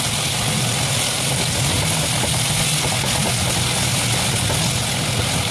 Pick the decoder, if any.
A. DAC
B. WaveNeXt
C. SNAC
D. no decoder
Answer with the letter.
D